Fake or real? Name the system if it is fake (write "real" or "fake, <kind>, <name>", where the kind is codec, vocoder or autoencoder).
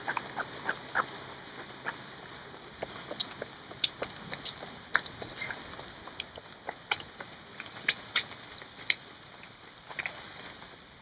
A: real